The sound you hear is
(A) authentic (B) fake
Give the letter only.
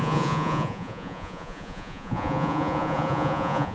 B